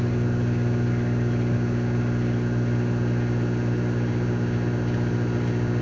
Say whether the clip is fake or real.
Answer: real